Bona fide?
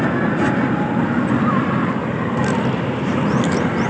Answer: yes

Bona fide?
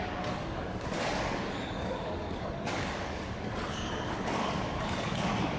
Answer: no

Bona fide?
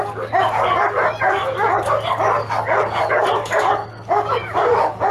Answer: no